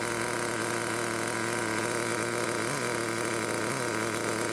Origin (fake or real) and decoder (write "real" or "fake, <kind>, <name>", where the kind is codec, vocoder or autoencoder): real